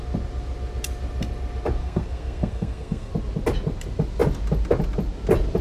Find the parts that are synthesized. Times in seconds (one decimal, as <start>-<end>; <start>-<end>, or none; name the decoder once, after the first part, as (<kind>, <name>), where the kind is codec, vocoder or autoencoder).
1.8-3.1 (codec, SNAC)